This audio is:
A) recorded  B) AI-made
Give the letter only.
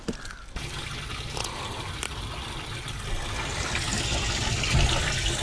A